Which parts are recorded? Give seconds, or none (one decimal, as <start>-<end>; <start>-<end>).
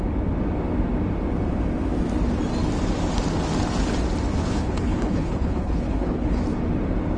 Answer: 0.0-4.4; 6.4-7.2